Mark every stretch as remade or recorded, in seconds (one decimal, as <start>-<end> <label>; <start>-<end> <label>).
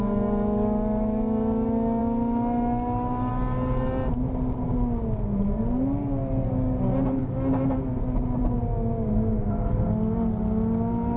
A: 0.0-11.2 recorded